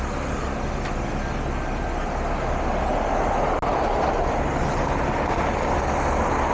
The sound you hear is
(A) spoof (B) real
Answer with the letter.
B